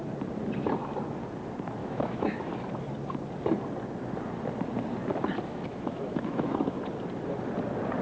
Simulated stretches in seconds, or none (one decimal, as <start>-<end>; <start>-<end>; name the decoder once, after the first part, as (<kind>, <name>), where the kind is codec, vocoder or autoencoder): 1.8-2.5 (autoencoder, DAC-VAE); 5.5-6.8